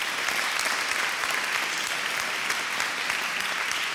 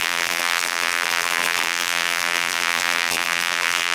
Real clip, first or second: first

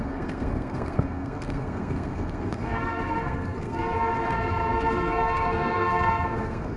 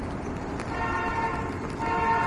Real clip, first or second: second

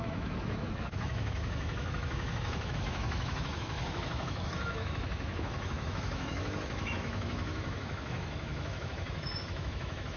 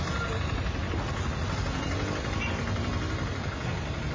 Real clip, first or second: second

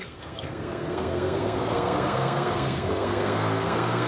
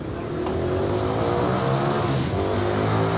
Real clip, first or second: second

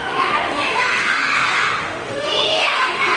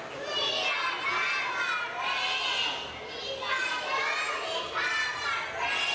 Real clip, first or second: second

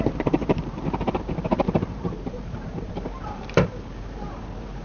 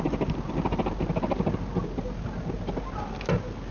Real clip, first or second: second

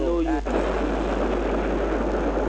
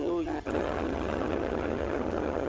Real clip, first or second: first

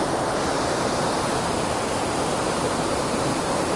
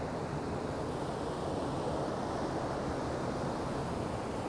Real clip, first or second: second